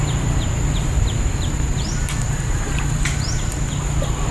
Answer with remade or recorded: recorded